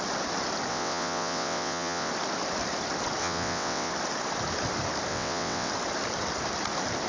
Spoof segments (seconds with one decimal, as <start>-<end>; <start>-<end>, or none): 0.7-2.1; 3.2-3.9; 5.1-5.7